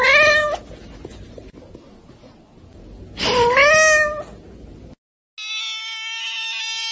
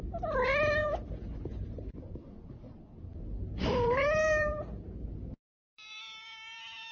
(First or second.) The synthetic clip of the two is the second